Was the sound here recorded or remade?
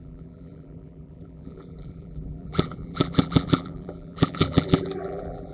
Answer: remade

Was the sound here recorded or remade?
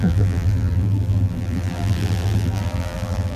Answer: remade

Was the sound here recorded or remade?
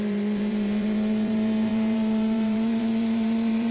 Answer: remade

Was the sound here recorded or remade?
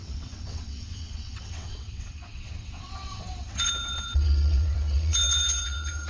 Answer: remade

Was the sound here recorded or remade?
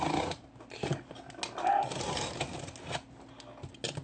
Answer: recorded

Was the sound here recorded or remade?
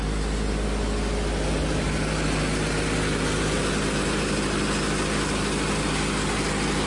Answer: recorded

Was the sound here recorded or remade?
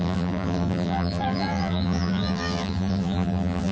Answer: remade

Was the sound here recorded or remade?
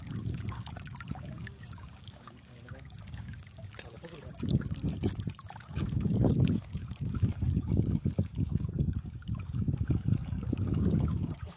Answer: remade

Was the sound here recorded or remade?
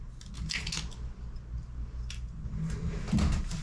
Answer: recorded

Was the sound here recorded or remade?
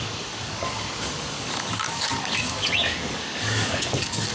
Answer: remade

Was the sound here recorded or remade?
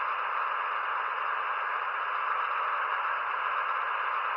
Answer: recorded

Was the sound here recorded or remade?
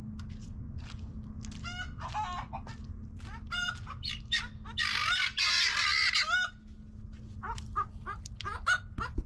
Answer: recorded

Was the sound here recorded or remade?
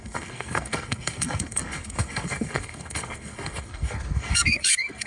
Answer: remade